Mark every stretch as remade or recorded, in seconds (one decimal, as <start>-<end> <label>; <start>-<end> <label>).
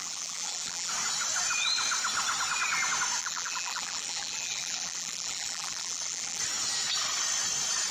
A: 0.0-0.9 remade; 0.9-3.2 recorded; 3.2-6.4 remade; 6.4-7.9 recorded